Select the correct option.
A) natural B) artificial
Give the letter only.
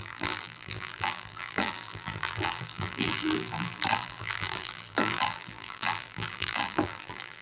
B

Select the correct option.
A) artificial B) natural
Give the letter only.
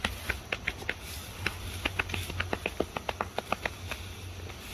B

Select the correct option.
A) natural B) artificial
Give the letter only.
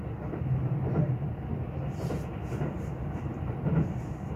B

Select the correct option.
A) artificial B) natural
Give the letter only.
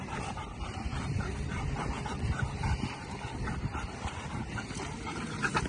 A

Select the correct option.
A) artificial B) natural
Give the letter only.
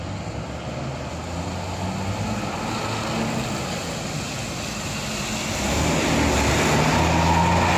B